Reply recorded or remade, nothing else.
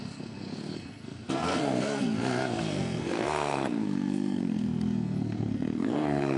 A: remade